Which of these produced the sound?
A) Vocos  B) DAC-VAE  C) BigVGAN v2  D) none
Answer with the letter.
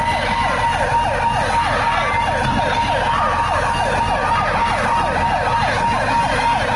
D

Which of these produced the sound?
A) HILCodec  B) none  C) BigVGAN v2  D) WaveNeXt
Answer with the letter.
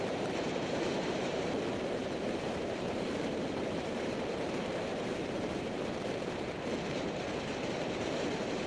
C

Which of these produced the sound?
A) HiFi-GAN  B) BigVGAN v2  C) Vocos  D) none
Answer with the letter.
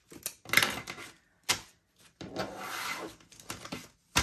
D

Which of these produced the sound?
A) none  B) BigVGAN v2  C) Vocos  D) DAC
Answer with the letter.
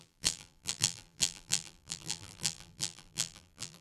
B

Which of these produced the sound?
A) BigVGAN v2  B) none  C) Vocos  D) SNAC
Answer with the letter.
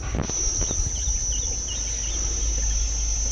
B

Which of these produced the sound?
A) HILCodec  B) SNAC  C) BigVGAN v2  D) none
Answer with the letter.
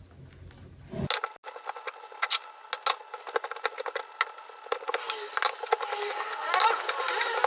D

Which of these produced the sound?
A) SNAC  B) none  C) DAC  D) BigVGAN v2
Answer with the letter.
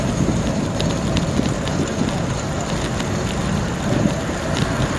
B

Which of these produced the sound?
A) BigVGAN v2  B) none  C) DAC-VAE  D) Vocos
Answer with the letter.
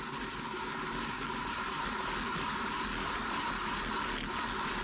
B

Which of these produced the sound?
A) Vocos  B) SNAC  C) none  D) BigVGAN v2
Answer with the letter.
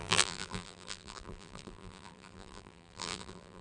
D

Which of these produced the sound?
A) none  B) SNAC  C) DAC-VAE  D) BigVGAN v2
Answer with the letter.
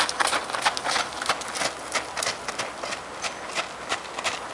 A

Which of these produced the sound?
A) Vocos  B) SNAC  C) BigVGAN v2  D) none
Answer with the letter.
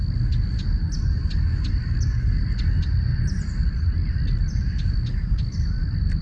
D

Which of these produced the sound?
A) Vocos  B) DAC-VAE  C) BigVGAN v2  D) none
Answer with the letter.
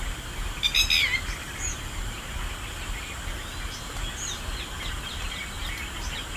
D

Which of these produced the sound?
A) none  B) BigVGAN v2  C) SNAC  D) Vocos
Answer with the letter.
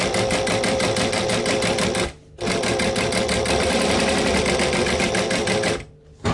A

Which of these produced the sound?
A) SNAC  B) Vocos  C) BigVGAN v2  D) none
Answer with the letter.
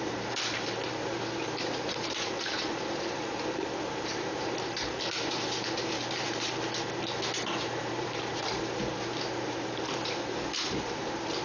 C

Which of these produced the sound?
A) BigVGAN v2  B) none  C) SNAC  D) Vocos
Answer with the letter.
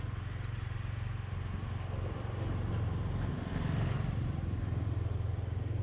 B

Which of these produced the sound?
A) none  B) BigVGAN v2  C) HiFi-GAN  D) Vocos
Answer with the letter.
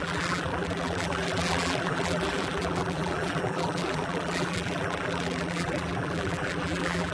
B